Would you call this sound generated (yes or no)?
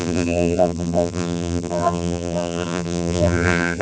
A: yes